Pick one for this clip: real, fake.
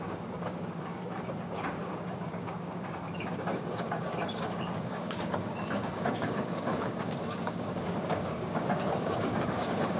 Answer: fake